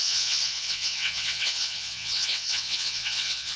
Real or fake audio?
fake